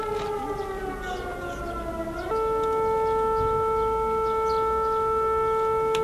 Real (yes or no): yes